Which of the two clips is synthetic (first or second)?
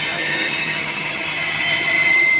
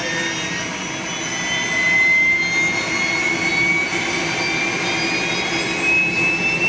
first